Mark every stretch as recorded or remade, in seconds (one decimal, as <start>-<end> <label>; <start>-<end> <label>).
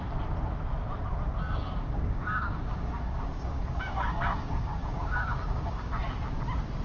0.0-1.8 recorded; 1.8-5.9 remade; 5.9-6.8 recorded